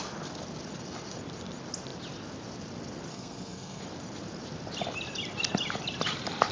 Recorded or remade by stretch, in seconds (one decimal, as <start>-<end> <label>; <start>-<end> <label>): 0.0-3.1 recorded; 3.1-3.8 remade; 3.8-6.5 recorded